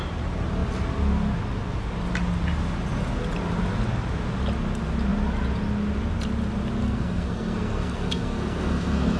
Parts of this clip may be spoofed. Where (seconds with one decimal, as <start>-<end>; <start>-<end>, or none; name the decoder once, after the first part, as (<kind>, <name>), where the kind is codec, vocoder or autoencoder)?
6.8-9.2 (codec, SNAC)

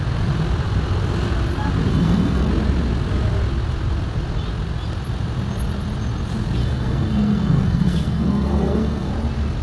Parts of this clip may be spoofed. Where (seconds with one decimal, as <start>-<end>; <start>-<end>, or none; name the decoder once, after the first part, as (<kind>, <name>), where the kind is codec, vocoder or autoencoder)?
1.9-2.5 (codec, SNAC); 6.6-9.1

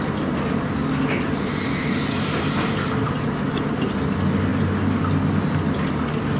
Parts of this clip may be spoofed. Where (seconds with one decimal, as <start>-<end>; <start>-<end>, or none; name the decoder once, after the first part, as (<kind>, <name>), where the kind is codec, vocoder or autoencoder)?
none

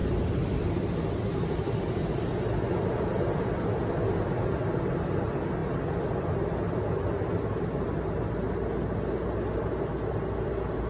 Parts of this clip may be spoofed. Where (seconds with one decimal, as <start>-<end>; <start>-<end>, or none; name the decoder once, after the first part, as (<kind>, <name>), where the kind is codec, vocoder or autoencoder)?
none

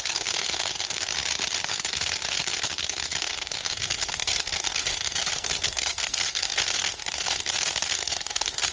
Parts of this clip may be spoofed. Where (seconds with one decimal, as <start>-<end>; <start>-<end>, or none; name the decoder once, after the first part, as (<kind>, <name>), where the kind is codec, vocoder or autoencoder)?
0.0-1.1 (codec, SNAC); 1.7-8.7